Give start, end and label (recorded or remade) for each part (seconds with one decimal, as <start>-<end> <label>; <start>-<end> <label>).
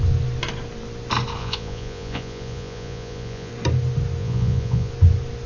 0.0-1.4 recorded; 1.4-3.5 remade; 3.5-4.2 recorded; 4.2-4.9 remade; 4.9-5.5 recorded